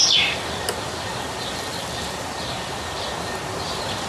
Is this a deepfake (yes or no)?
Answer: no